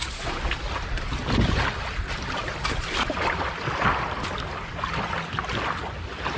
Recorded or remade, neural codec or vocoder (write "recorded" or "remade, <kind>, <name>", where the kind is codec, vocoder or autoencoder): recorded